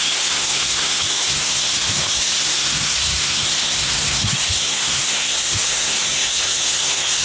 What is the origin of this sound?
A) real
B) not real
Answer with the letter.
B